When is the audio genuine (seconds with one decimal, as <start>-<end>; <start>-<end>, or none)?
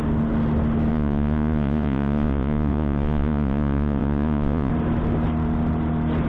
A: 0.0-0.9; 4.7-6.3